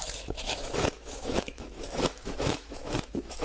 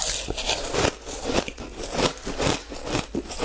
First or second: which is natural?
second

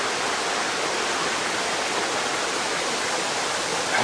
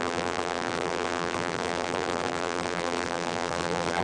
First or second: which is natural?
first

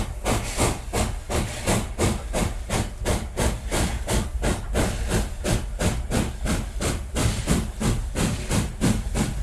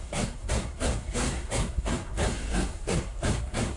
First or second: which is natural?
first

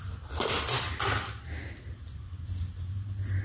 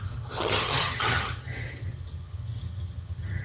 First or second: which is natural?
first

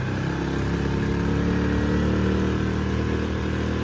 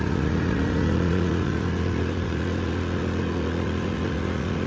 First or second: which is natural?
first